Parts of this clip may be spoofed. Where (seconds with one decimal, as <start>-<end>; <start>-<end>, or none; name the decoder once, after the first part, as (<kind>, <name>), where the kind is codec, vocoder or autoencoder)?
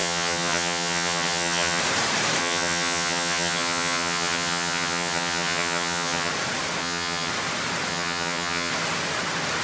0.0-1.8 (vocoder, HiFi-GAN); 2.4-6.3; 6.8-7.3; 7.9-8.7